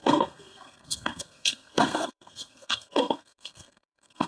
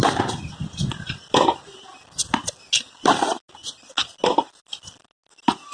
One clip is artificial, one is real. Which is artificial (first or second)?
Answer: first